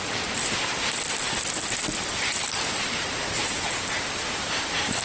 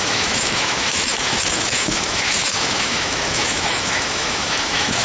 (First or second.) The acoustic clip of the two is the first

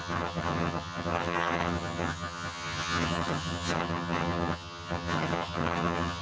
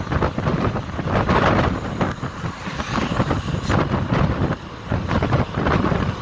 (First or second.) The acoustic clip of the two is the second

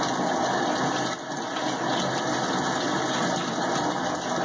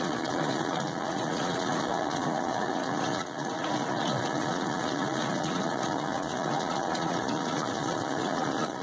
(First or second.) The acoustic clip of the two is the first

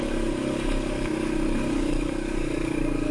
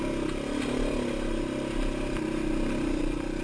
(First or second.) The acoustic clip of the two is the second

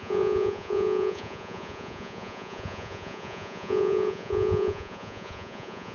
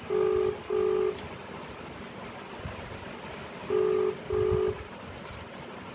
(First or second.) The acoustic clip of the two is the second